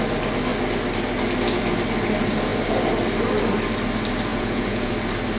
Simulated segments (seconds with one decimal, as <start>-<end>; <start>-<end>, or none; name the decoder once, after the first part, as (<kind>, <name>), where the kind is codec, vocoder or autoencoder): 4.3-4.9 (vocoder, Vocos)